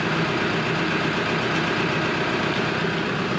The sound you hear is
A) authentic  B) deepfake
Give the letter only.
A